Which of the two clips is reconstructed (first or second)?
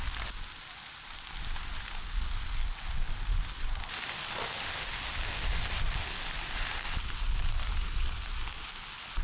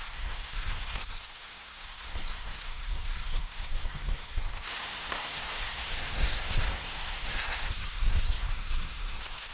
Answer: second